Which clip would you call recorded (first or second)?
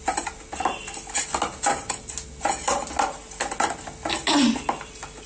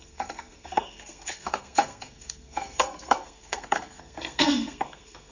first